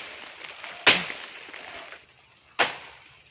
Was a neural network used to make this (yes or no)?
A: no